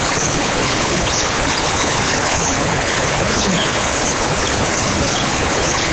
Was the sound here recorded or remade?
remade